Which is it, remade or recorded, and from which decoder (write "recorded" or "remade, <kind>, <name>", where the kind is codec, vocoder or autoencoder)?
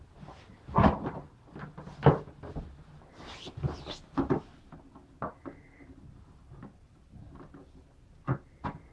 recorded